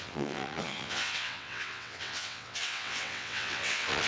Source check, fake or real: fake